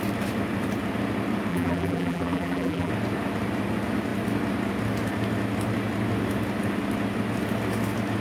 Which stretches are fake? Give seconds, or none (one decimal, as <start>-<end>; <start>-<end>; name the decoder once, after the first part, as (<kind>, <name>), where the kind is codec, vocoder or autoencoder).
1.5-2.9 (vocoder, BigVGAN v2)